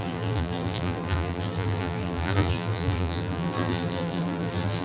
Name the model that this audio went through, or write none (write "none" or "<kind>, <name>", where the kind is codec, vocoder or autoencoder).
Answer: vocoder, BigVGAN v2